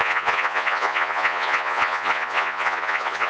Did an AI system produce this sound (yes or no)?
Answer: yes